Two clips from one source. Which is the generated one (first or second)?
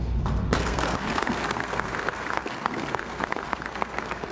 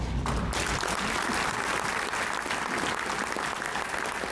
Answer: first